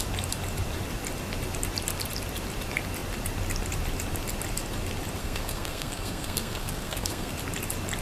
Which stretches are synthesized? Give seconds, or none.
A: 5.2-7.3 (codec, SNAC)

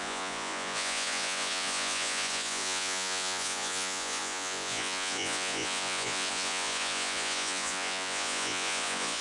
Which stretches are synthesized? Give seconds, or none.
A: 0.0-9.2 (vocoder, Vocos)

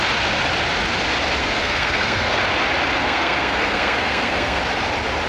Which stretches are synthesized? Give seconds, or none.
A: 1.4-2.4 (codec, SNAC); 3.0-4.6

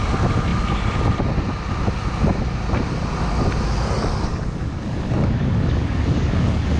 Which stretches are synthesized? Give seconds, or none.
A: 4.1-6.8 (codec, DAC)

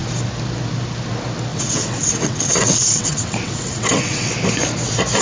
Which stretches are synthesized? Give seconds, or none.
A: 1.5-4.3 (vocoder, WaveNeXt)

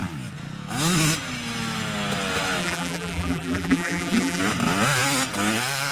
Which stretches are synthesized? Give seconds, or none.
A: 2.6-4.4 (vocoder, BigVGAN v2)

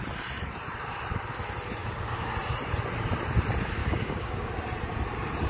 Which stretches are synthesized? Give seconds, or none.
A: 1.8-2.3 (codec, DAC); 3.8-4.5

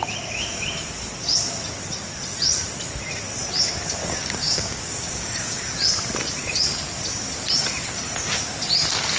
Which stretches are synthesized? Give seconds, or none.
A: 4.0-5.6 (codec, DAC)